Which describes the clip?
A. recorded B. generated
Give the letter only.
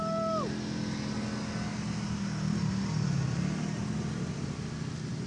A